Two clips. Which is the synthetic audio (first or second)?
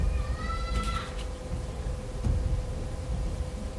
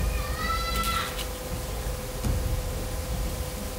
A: first